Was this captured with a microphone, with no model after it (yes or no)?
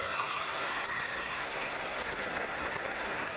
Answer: no